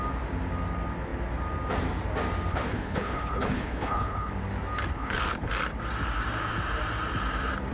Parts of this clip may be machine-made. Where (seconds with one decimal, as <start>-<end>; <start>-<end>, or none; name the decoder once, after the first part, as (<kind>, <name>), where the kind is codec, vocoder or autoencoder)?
2.5-4.3 (codec, HILCodec); 4.9-5.5